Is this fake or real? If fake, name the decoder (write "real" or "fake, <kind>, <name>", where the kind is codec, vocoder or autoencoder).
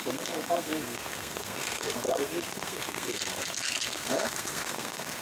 fake, codec, SNAC